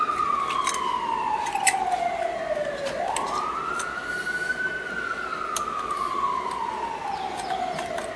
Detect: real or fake real